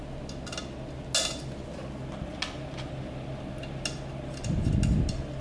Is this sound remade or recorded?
recorded